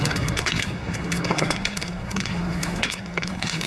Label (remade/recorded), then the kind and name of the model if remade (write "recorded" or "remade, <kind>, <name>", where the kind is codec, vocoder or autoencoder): remade, codec, SNAC